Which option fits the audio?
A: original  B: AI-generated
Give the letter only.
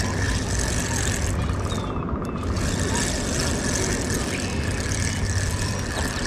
A